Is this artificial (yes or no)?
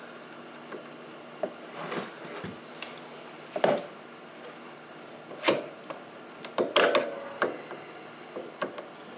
no